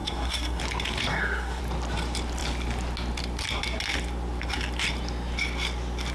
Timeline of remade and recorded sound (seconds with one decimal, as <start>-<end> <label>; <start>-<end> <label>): 0.0-0.6 remade; 0.6-1.1 recorded; 1.1-1.6 remade; 1.6-6.1 recorded